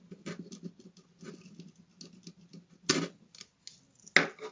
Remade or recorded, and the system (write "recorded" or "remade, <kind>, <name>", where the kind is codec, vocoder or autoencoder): recorded